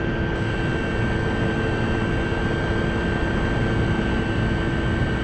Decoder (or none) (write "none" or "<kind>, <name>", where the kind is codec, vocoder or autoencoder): none